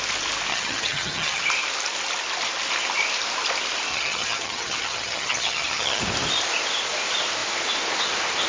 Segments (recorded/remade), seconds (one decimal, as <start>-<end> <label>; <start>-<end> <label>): 0.0-0.5 recorded; 0.5-1.4 remade; 1.4-3.9 recorded; 3.9-6.0 remade; 6.0-8.5 recorded